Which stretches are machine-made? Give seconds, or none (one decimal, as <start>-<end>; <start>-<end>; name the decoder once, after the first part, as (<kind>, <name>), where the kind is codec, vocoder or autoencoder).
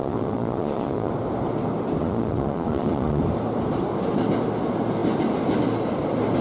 0.0-1.1 (vocoder, Vocos); 2.0-3.2